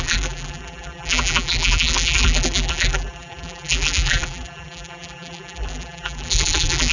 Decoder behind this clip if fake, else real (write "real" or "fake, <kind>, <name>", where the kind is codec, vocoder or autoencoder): fake, vocoder, BigVGAN v2